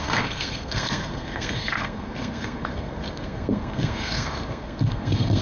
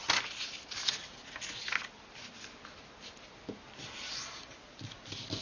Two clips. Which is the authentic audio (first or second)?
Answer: second